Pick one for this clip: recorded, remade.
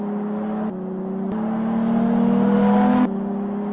recorded